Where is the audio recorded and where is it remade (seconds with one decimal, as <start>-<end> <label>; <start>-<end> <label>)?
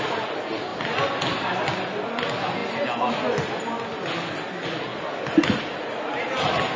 0.0-6.8 recorded